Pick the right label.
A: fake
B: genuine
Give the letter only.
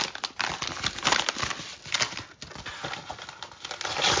B